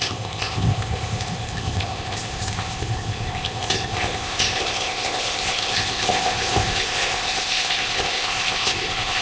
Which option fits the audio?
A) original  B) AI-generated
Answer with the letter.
B